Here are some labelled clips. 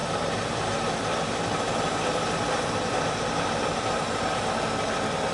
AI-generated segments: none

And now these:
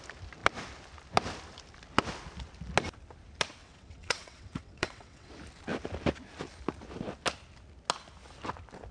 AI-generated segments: 3.6-5.3 (vocoder, WaveNeXt)

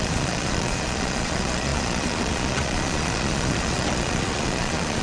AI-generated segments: 0.0-5.0 (vocoder, Vocos)

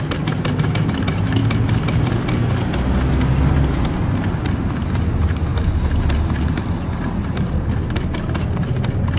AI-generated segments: 0.0-1.4 (vocoder, BigVGAN v2); 4.9-5.5; 6.2-9.2

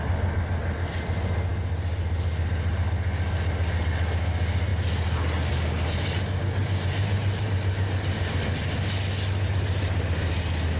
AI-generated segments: 6.6-7.9 (vocoder, BigVGAN v2)